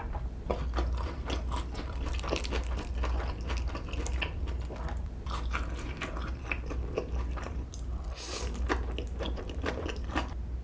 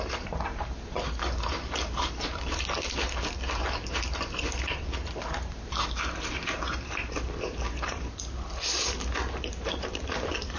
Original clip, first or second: first